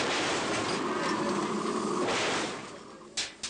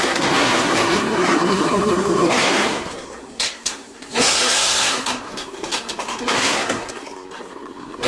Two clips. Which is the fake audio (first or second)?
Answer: second